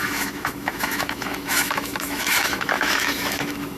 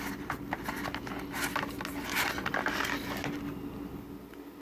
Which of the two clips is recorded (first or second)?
second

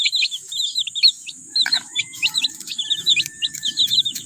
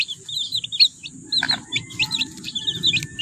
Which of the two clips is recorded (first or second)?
second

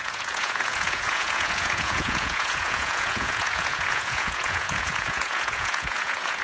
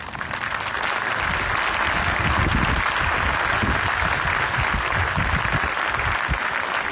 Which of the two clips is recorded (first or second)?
second